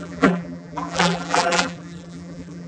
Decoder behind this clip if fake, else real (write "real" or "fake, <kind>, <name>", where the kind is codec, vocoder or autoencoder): fake, vocoder, BigVGAN v2